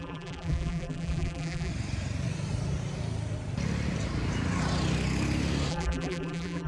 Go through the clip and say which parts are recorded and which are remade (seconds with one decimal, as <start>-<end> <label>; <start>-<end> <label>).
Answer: 0.0-1.7 remade; 1.7-5.7 recorded; 5.7-6.7 remade